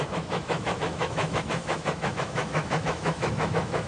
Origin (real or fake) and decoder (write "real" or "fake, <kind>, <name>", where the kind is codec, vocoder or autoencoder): fake, autoencoder, DAC-VAE